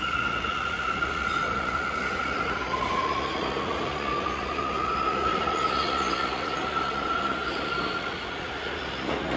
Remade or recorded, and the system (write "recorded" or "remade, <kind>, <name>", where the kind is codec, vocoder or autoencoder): remade, vocoder, Vocos